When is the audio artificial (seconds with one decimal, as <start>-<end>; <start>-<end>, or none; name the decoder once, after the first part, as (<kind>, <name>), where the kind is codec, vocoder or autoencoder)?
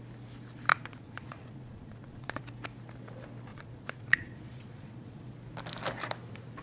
0.7-2.4 (vocoder, Vocos); 3.5-5.3